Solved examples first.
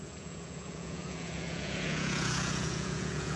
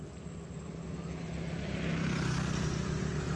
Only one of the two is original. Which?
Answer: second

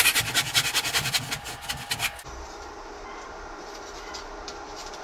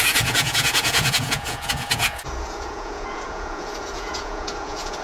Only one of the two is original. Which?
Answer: first